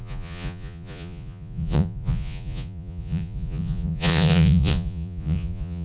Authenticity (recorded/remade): remade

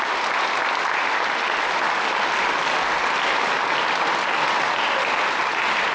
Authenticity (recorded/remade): recorded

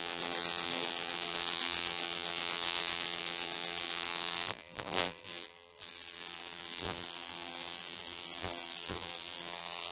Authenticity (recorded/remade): remade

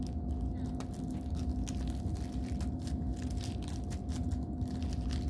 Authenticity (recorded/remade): recorded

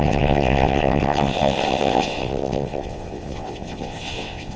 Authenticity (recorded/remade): remade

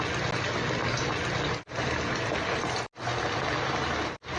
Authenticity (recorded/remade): recorded